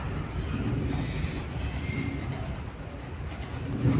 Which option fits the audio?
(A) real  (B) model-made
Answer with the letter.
A